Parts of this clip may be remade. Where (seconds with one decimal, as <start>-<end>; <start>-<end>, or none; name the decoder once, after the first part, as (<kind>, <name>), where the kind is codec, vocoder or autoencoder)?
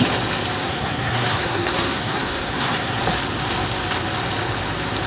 0.6-3.0 (codec, SNAC)